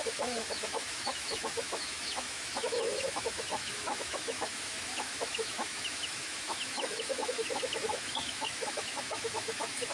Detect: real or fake fake